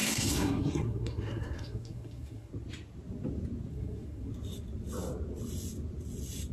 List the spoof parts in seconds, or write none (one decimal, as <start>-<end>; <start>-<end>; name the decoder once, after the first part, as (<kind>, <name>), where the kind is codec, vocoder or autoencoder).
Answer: 0.0-2.5 (codec, SNAC); 3.7-4.3